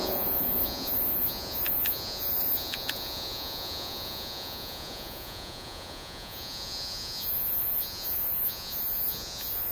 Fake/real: fake